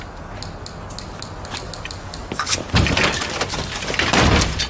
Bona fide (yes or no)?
yes